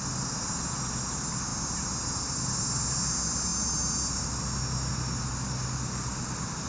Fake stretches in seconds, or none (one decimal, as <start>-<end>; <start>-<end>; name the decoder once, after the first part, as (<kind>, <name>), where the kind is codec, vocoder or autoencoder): none

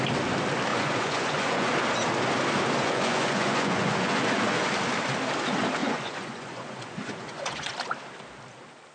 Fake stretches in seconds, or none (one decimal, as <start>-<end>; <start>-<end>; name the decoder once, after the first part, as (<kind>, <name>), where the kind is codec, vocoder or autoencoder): 0.7-1.7 (vocoder, Vocos); 2.8-4.7; 5.8-7.7

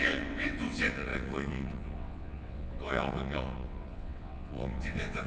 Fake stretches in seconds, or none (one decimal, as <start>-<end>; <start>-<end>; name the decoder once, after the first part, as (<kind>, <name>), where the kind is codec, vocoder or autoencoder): 0.0-5.3 (vocoder, WaveNeXt)